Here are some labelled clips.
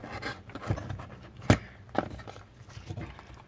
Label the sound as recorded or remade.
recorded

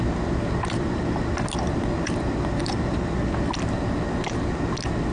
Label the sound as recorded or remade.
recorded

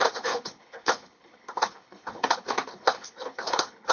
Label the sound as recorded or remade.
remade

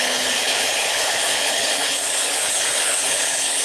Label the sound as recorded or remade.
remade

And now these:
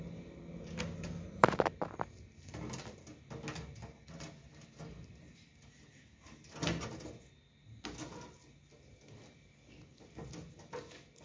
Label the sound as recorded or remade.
recorded